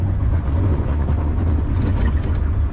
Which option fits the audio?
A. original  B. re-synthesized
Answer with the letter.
B